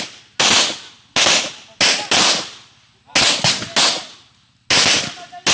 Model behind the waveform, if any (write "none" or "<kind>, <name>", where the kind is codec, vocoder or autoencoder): none